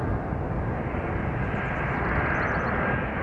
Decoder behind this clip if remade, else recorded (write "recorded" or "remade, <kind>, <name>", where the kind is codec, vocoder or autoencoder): recorded